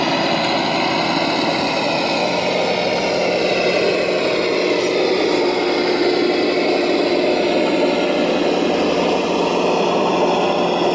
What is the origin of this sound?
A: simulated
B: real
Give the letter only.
B